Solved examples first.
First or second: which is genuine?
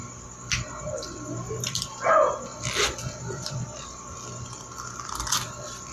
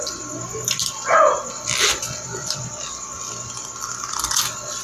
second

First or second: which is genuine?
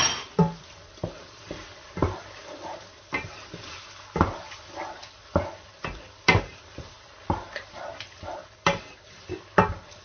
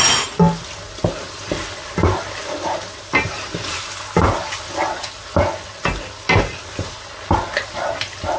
second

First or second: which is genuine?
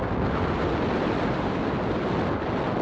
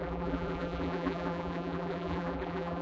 first